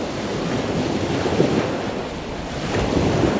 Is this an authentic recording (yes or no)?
yes